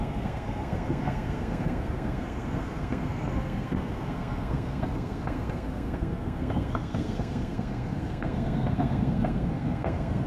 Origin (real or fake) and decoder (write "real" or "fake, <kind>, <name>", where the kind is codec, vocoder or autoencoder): fake, codec, SNAC